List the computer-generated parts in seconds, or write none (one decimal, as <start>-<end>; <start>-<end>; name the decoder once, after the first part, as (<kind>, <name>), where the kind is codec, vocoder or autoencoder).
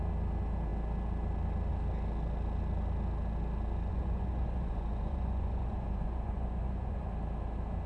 3.9-7.1 (vocoder, Vocos)